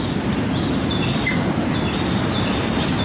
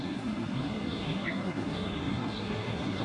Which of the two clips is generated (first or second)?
second